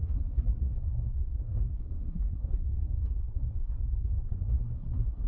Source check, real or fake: fake